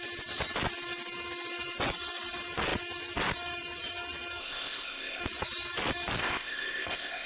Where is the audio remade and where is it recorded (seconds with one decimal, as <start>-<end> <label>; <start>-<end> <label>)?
0.0-4.4 recorded; 4.4-5.2 remade; 5.2-6.2 recorded; 6.2-7.3 remade